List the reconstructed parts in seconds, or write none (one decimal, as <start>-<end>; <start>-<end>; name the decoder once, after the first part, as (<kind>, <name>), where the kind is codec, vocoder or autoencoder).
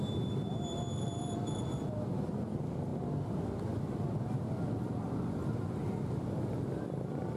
none